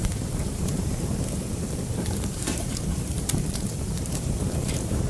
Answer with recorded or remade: remade